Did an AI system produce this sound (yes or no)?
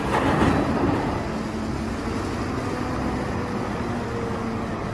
no